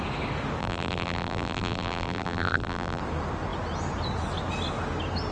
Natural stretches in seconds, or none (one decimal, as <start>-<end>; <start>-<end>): 0.0-0.6; 3.0-5.3